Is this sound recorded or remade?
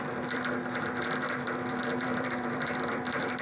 remade